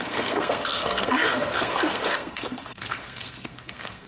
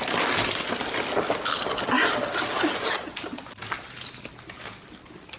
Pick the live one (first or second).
second